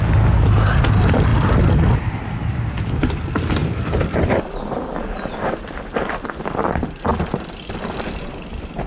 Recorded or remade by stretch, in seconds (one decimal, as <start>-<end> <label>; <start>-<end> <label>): 0.0-1.3 remade; 1.3-2.8 recorded; 2.8-3.6 remade; 3.6-6.3 recorded; 6.3-7.1 remade; 7.1-8.0 recorded; 8.0-8.9 remade